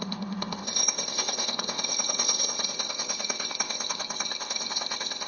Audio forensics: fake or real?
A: fake